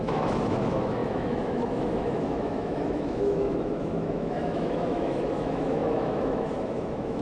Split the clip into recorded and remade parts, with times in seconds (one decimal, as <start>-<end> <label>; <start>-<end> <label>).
0.0-7.2 remade